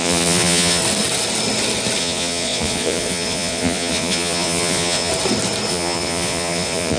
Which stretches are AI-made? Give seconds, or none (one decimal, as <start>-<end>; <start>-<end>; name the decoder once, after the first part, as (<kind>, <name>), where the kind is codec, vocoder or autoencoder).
0.0-0.8 (vocoder, Vocos); 2.0-5.1; 5.7-7.0

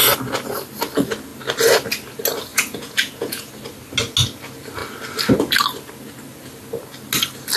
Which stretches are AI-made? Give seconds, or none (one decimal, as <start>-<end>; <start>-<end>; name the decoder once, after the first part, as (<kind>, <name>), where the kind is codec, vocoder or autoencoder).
2.5-3.5 (vocoder, Vocos)

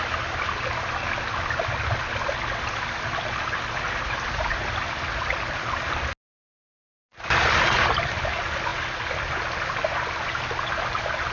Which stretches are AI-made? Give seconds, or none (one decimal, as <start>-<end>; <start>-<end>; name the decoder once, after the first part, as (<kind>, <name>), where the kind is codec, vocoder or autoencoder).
none

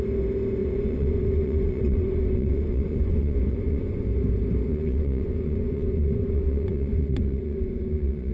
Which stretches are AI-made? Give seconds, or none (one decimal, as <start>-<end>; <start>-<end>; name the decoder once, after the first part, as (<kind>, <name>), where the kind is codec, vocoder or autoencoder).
0.6-4.0 (vocoder, Vocos); 4.7-8.3

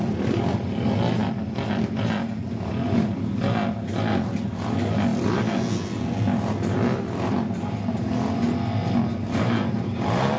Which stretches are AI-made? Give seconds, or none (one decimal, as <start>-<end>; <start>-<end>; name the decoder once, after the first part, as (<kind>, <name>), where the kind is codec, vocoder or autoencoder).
none